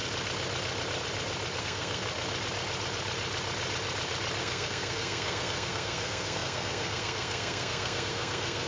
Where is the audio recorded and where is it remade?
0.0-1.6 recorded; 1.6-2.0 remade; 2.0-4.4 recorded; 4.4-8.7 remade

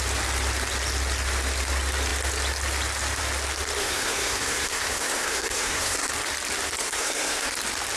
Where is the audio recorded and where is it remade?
0.0-3.8 recorded; 3.8-6.1 remade; 6.1-6.8 recorded; 6.8-7.5 remade; 7.5-8.0 recorded

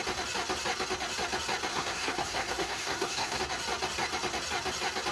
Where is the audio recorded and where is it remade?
0.0-1.7 recorded; 1.7-3.4 remade; 3.4-5.1 recorded

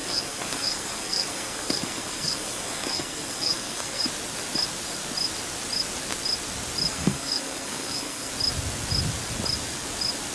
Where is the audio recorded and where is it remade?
0.0-4.0 remade; 4.0-6.9 recorded; 6.9-8.3 remade; 8.3-10.3 recorded

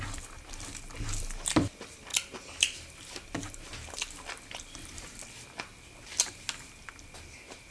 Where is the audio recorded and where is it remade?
0.0-7.7 recorded